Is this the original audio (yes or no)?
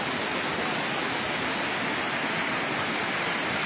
yes